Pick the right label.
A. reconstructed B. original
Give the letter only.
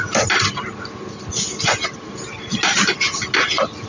B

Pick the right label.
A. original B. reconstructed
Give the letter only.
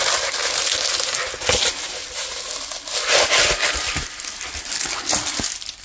A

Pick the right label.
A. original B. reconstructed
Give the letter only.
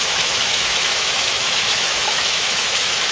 B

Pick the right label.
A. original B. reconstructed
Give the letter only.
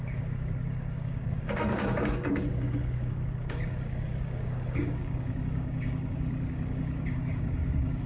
B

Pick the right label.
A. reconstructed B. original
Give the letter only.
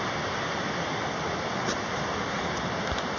B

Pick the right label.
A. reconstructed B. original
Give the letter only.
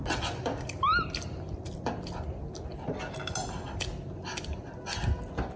B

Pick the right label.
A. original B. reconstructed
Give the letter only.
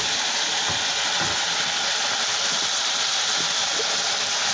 A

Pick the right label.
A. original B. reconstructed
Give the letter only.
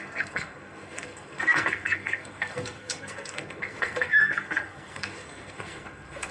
B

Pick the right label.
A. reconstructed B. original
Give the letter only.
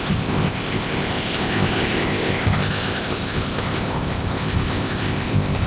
A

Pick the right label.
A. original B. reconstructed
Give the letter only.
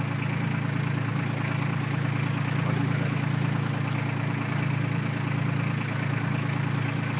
A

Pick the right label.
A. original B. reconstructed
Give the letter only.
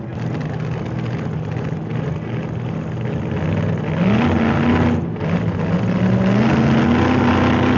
A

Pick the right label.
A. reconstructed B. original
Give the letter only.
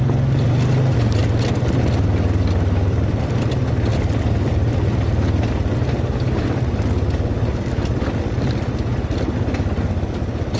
B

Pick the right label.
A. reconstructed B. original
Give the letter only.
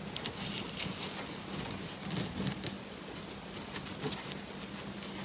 B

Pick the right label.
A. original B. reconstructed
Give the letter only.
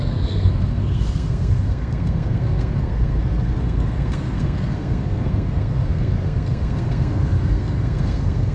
B